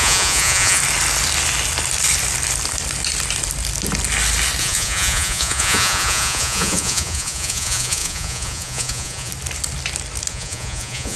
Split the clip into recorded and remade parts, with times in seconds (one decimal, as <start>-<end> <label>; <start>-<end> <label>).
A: 0.0-0.8 remade; 0.8-4.6 recorded; 4.6-9.3 remade; 9.3-10.3 recorded; 10.3-11.2 remade